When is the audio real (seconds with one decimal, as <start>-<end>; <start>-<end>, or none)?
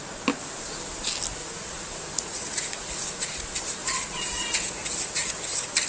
0.0-1.4; 3.4-3.8; 5.5-5.9